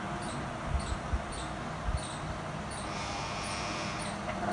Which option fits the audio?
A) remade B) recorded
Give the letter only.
B